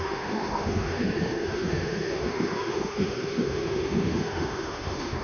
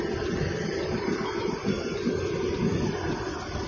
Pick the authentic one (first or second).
second